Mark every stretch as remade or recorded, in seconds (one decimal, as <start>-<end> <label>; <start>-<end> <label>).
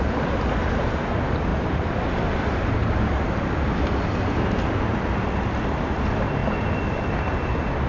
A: 0.0-6.4 recorded; 6.4-7.0 remade; 7.0-7.9 recorded